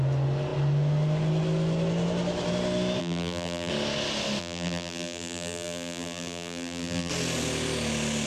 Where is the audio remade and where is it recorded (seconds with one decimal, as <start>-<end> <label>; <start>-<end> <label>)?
0.0-3.0 recorded; 3.0-3.7 remade; 3.7-4.4 recorded; 4.4-7.1 remade; 7.1-8.3 recorded